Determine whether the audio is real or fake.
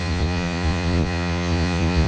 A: fake